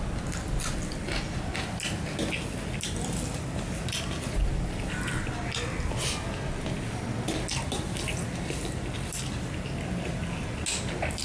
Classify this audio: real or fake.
real